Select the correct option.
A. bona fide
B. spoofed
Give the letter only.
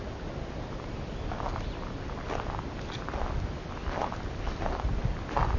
A